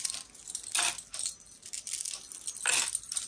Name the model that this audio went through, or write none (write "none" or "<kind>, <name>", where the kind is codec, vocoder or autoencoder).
none